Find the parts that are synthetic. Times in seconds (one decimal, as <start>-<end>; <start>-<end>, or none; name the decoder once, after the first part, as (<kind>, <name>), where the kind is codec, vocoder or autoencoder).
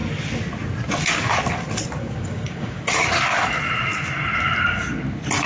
2.0-2.8 (codec, DAC)